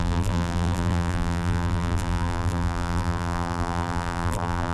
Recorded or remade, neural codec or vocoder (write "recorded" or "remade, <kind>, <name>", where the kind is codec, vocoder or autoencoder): remade, vocoder, BigVGAN v2